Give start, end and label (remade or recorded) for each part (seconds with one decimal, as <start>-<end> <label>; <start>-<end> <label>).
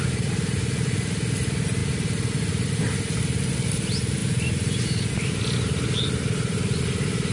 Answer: 0.0-1.8 recorded; 1.8-2.8 remade; 2.8-4.2 recorded; 4.2-6.6 remade; 6.6-7.3 recorded